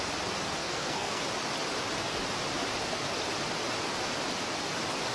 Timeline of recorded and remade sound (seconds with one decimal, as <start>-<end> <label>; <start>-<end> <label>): 0.0-0.6 recorded; 0.6-1.2 remade; 1.2-5.1 recorded